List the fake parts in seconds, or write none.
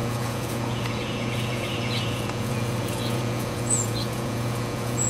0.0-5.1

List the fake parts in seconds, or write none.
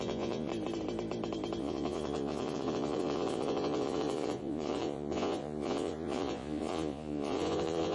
0.0-0.5; 1.6-7.9